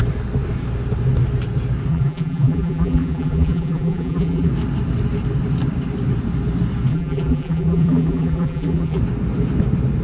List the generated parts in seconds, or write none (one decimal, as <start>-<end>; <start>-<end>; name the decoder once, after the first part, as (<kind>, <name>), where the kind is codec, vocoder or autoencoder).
1.9-4.5 (vocoder, BigVGAN v2); 6.9-9.0